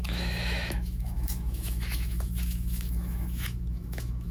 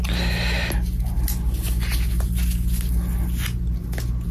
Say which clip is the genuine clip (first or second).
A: second